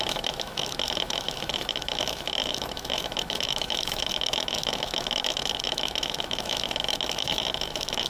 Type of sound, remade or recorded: remade